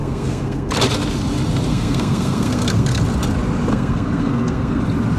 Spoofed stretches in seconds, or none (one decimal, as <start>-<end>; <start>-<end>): 0.0-0.7; 1.7-3.0; 3.7-4.8